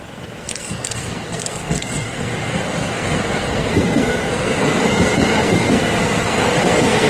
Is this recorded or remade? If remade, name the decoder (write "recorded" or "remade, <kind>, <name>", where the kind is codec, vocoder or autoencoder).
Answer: remade, codec, SNAC